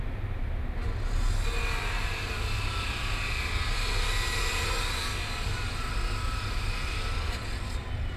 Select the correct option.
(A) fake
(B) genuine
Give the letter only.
B